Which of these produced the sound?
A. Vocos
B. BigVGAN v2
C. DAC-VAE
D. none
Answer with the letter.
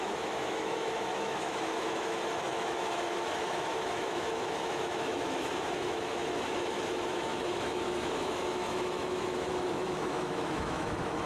C